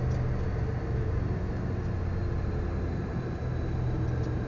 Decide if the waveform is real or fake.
real